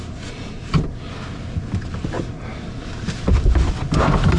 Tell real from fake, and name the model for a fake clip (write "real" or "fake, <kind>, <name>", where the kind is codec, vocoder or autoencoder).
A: real